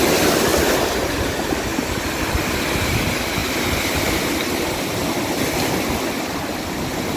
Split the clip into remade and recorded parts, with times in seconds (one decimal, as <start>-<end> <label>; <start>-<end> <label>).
0.0-7.2 recorded